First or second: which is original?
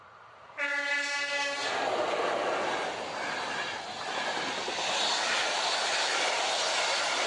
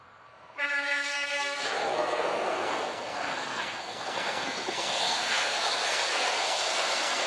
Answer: first